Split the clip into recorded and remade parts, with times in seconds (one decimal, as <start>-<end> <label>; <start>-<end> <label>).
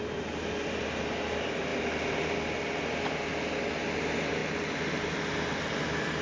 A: 0.0-6.2 recorded